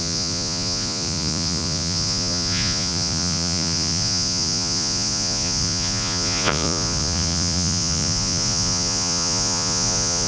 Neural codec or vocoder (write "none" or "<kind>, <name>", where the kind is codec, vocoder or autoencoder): vocoder, Vocos